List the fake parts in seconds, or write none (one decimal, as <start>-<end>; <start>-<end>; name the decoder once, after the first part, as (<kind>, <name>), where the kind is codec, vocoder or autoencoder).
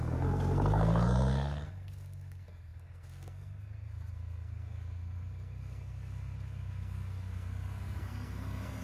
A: 0.0-8.8 (codec, SNAC)